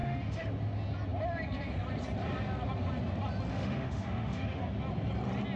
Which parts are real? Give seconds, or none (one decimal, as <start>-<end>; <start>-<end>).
0.5-3.5; 4.6-5.6

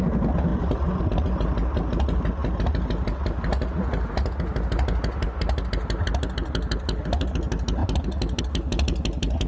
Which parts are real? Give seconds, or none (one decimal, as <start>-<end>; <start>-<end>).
0.0-9.5

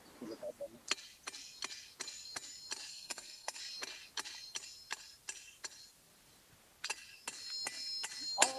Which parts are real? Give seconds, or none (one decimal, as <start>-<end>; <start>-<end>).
0.0-2.9; 3.6-8.6

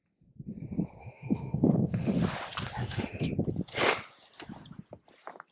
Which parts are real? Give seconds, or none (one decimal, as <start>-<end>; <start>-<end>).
0.0-1.0; 2.2-2.8; 3.3-5.5